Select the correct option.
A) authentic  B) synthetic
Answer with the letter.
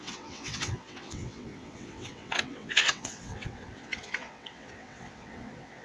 B